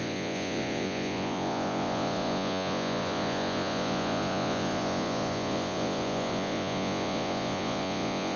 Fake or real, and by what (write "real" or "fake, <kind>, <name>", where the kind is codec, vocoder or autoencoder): fake, vocoder, Vocos